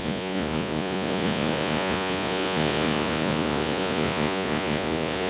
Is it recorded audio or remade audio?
remade